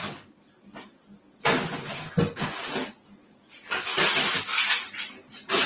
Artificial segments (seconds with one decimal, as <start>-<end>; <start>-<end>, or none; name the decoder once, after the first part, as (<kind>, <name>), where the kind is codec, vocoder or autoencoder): none